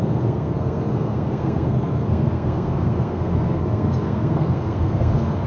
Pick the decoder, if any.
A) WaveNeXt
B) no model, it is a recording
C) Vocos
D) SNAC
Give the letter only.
D